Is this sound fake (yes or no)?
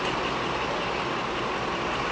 no